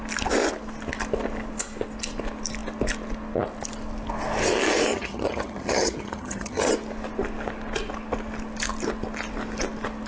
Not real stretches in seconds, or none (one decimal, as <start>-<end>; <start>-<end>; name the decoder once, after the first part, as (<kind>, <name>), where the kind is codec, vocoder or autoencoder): 4.9-6.7 (vocoder, HiFi-GAN)